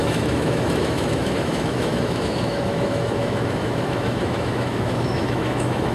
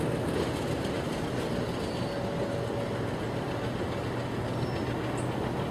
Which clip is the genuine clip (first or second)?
second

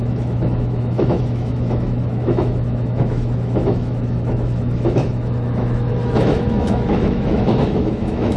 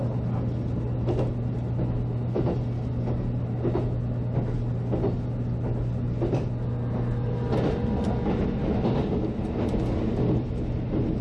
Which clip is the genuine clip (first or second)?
second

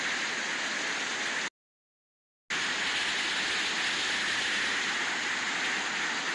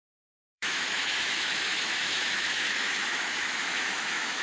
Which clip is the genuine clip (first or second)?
first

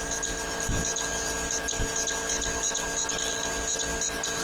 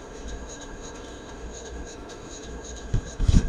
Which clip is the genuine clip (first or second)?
first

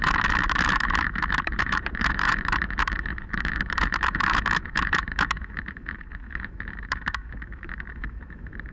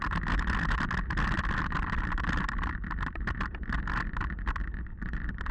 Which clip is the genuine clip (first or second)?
second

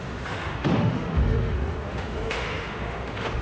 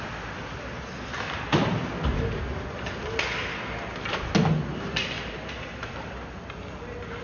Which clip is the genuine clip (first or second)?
second